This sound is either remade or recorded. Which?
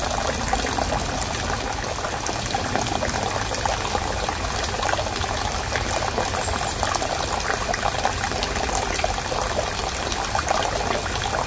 recorded